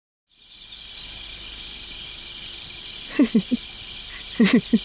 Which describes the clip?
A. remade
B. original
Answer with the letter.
B